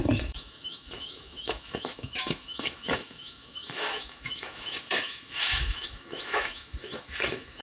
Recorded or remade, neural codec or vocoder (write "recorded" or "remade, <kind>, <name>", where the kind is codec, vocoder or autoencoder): remade, autoencoder, DAC-VAE